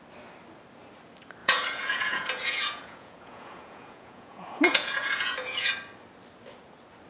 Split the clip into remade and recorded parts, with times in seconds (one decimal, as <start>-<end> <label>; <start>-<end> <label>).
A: 0.0-1.4 recorded; 1.4-5.7 remade; 5.7-7.1 recorded